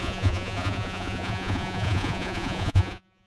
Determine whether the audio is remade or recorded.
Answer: remade